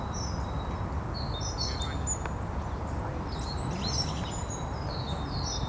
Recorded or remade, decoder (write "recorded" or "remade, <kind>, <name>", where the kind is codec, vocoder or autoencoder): recorded